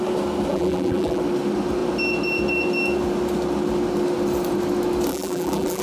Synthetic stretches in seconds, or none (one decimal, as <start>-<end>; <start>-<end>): 0.5-1.2; 5.1-5.8